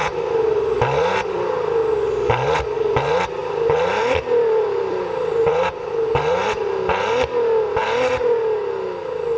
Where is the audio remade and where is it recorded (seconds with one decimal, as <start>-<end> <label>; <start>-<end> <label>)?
0.0-1.5 remade; 1.5-3.4 recorded; 3.4-5.9 remade; 5.9-9.4 recorded